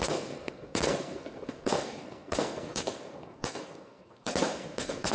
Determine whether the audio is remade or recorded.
remade